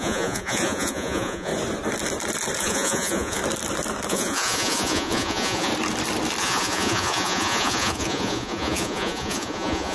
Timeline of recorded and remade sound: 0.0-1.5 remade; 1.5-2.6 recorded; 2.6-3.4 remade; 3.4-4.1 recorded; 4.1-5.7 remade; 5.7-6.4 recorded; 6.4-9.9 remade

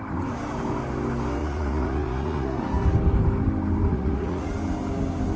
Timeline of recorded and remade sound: 0.0-1.4 recorded; 1.4-2.6 remade; 2.6-3.9 recorded; 3.9-4.5 remade; 4.5-5.4 recorded

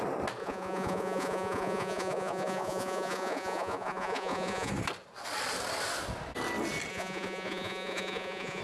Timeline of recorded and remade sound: 0.0-0.4 recorded; 0.4-4.7 remade; 4.7-6.9 recorded; 6.9-8.6 remade